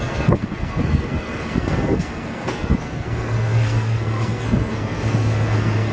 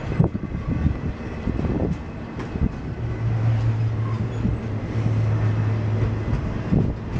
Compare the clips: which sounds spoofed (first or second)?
first